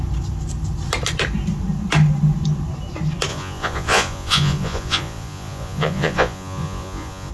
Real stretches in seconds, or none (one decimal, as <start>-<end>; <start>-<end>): 0.0-3.3